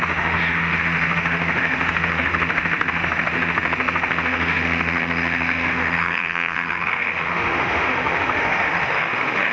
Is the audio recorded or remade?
remade